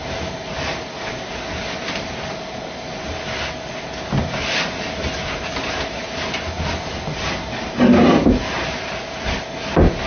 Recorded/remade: recorded